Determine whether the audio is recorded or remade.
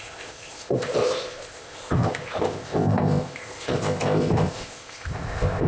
remade